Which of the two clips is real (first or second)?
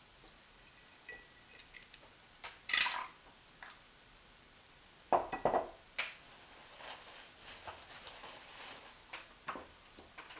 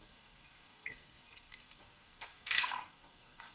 first